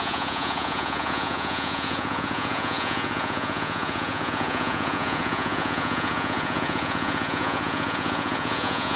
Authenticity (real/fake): fake